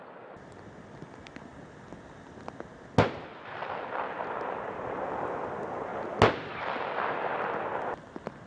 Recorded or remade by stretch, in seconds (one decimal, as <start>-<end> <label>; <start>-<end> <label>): 0.0-8.5 recorded